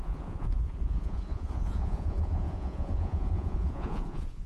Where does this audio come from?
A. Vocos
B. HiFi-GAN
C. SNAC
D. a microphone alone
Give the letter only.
A